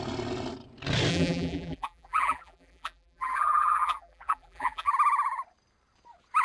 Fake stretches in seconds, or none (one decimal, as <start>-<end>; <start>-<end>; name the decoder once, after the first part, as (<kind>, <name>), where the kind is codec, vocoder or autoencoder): 1.1-4.9 (vocoder, BigVGAN v2)